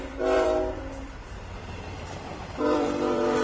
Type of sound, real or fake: fake